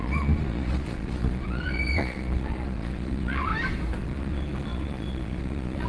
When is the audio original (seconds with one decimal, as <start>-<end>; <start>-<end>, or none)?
3.5-4.0